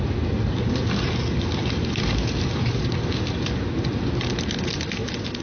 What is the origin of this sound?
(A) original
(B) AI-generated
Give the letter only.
A